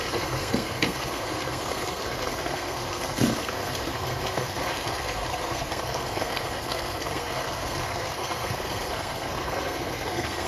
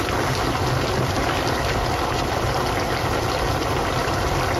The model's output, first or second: first